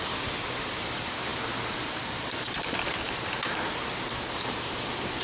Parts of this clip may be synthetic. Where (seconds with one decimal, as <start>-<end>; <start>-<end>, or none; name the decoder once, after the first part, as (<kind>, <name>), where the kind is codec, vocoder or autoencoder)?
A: 0.0-5.2 (vocoder, BigVGAN v2)